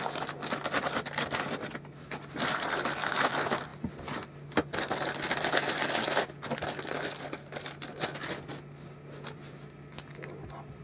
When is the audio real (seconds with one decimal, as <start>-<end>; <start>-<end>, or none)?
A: 0.0-10.8